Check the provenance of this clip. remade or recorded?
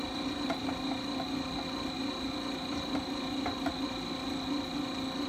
recorded